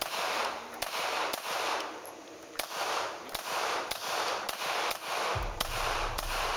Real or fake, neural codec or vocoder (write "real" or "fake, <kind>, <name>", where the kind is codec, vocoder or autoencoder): fake, vocoder, BigVGAN v2